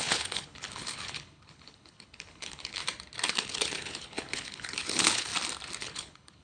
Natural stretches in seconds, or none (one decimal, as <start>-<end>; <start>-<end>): 2.8-3.3; 5.3-5.8